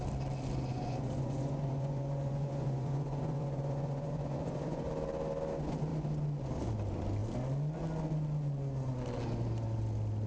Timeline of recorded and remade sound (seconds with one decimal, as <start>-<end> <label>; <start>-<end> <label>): 0.0-0.7 recorded; 0.7-4.9 remade; 4.9-10.3 recorded